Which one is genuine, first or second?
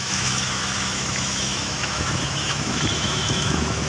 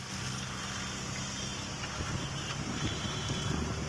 second